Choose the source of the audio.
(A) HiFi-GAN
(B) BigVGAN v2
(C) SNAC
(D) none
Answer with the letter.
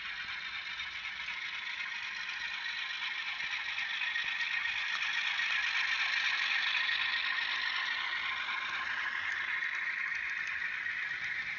D